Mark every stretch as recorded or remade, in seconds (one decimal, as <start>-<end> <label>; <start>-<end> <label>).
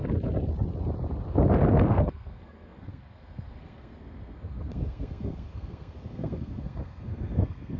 0.0-1.9 recorded; 1.9-7.8 remade